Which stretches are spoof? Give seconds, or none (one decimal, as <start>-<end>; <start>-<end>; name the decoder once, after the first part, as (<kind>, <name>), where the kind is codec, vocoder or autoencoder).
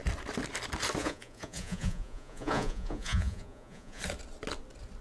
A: 1.0-4.0 (vocoder, Vocos)